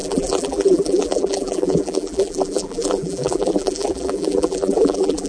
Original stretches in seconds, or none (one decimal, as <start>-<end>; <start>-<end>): none